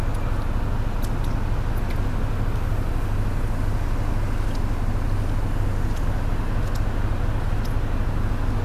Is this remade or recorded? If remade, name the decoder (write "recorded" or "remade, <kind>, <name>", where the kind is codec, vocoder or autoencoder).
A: recorded